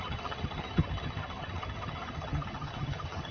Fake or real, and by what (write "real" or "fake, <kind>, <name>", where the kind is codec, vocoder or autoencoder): fake, vocoder, HiFi-GAN